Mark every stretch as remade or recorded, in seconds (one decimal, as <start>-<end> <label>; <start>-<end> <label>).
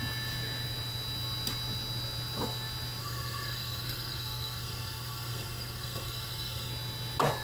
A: 0.0-3.0 recorded; 3.0-6.7 remade; 6.7-7.4 recorded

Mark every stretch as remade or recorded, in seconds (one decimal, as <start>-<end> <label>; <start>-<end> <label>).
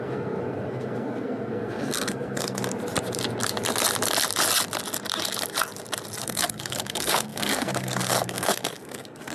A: 0.0-2.6 remade; 2.6-6.2 recorded; 6.2-9.3 remade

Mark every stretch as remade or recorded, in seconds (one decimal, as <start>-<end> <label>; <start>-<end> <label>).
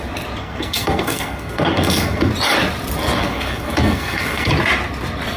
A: 0.0-0.4 recorded; 0.4-2.3 remade; 2.3-3.2 recorded; 3.2-4.5 remade; 4.5-5.4 recorded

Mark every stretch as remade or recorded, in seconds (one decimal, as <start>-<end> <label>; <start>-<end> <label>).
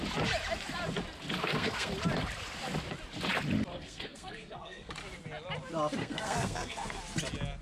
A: 0.0-1.4 recorded; 1.4-1.9 remade; 1.9-3.7 recorded; 3.7-4.9 remade; 4.9-6.0 recorded; 6.0-6.9 remade; 6.9-7.6 recorded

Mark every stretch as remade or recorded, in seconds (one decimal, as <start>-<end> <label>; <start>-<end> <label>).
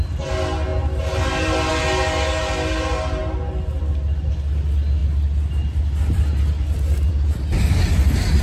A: 0.0-8.4 recorded